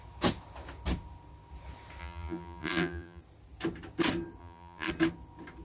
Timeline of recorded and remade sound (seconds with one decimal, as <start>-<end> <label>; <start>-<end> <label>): 0.0-2.0 recorded; 2.0-3.2 remade; 3.2-4.4 recorded; 4.4-4.9 remade; 4.9-5.6 recorded